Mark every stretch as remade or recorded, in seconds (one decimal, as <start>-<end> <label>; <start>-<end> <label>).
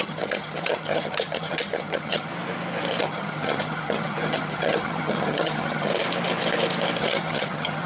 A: 0.0-2.3 remade; 2.3-3.0 recorded; 3.0-5.9 remade; 5.9-7.0 recorded; 7.0-7.9 remade